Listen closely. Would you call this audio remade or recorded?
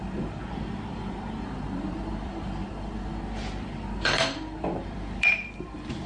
remade